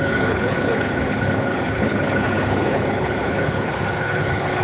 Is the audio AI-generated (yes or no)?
yes